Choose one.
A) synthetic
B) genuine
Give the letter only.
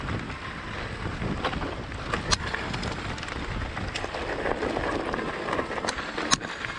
B